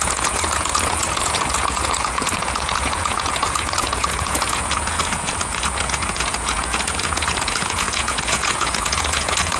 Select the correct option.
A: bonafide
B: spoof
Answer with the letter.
B